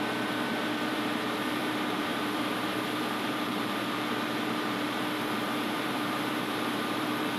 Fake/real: fake